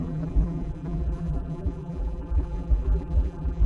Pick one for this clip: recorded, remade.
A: remade